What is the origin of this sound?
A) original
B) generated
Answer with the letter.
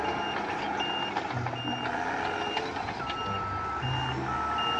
A